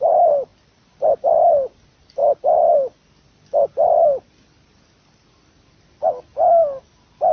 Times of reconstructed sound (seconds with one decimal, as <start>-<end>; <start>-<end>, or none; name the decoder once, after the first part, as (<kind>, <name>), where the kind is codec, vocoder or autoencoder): none